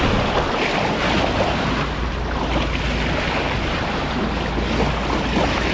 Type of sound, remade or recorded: recorded